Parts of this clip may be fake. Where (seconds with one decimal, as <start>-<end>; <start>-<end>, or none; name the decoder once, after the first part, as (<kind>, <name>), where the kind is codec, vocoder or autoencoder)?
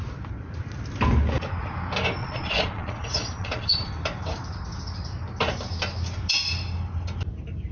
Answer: 2.2-3.9 (vocoder, Vocos)